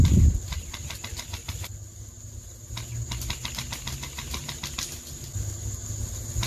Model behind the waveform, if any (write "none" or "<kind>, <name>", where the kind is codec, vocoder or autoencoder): none